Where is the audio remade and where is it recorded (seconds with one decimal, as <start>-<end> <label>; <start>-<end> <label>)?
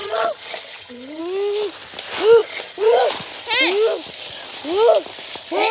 0.0-1.2 remade; 1.2-2.4 recorded; 2.4-3.0 remade; 3.0-5.7 recorded